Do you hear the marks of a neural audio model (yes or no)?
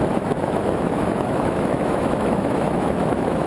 yes